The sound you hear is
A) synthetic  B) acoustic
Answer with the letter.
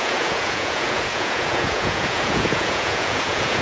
A